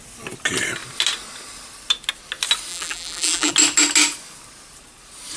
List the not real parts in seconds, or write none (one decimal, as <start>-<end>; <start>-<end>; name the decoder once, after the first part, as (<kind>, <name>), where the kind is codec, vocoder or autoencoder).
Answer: 2.7-3.5 (vocoder, BigVGAN v2)